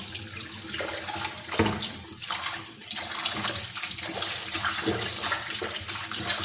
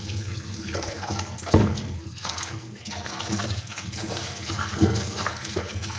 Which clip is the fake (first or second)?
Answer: second